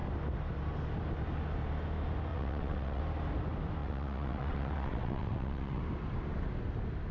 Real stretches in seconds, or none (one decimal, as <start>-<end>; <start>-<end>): 0.0-2.3; 3.0-3.8; 5.8-7.1